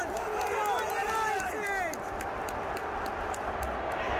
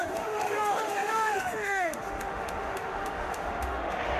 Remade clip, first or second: second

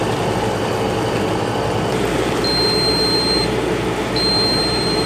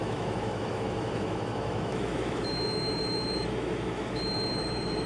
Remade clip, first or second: second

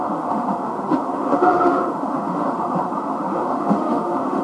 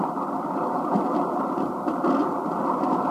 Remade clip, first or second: first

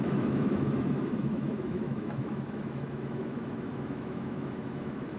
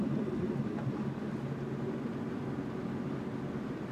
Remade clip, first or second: first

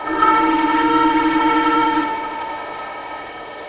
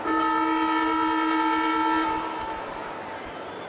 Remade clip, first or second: first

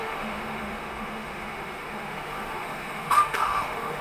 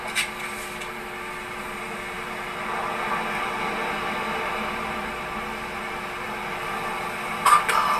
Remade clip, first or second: first